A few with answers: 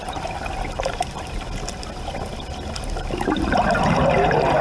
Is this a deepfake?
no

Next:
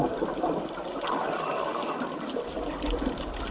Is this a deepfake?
no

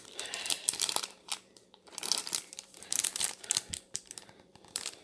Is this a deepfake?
yes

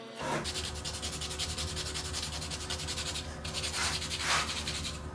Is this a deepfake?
no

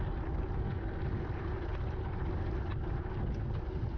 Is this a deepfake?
no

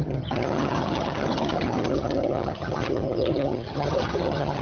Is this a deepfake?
yes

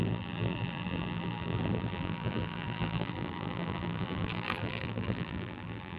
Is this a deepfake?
yes